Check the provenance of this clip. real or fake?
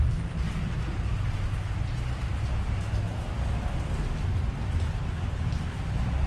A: real